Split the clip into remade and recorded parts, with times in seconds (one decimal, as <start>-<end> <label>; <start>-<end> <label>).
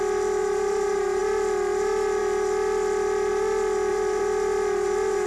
0.0-0.4 recorded; 0.4-1.2 remade; 1.2-3.9 recorded; 3.9-5.3 remade